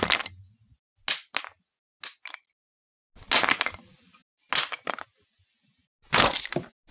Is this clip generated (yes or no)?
no